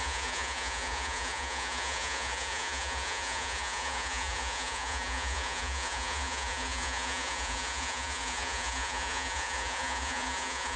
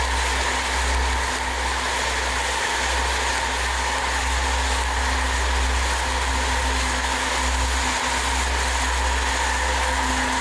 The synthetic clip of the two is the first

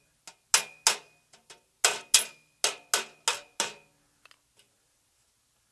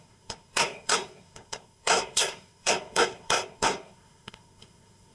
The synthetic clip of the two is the second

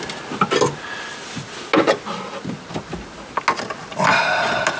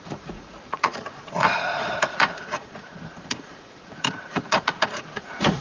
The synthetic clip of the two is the second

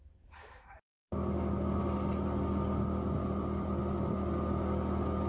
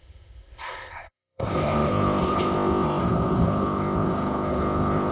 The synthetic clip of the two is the second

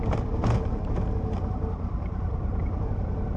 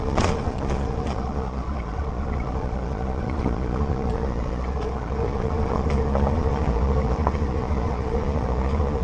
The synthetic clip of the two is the second